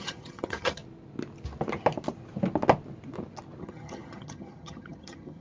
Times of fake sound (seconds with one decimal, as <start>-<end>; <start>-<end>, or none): 0.0-0.8; 3.6-5.4